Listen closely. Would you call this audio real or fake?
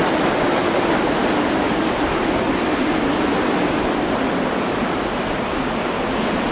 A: real